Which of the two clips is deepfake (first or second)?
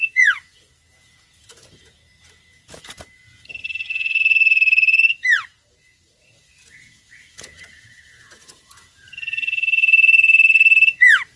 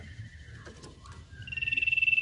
first